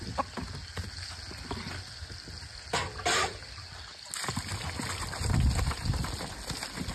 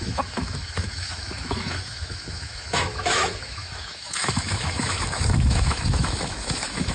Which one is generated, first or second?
second